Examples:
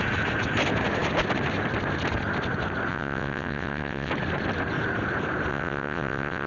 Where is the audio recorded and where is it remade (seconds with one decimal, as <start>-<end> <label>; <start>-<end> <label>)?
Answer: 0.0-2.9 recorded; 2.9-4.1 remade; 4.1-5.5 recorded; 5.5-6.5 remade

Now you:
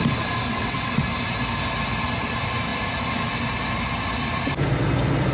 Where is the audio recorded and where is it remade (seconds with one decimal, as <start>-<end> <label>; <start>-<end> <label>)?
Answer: 0.0-0.5 recorded; 0.5-1.0 remade; 1.0-5.3 recorded

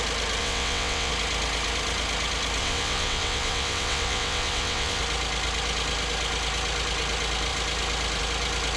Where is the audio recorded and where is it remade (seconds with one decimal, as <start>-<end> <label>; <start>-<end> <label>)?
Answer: 0.0-0.4 recorded; 0.4-1.1 remade; 1.1-2.6 recorded; 2.6-5.0 remade; 5.0-8.8 recorded